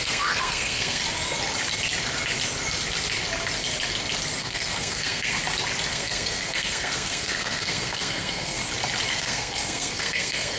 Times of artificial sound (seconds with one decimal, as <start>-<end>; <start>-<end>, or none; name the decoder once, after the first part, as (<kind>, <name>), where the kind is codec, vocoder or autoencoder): 0.0-1.0 (codec, SNAC); 4.4-5.4; 5.9-8.6; 9.1-10.6